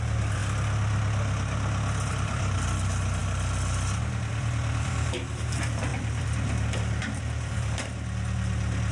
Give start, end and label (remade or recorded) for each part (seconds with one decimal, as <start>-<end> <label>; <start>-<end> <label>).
0.0-0.4 remade; 0.4-2.1 recorded; 2.1-3.2 remade; 3.2-4.3 recorded; 4.3-8.9 remade